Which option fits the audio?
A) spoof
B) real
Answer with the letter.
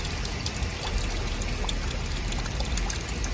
B